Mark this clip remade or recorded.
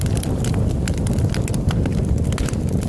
recorded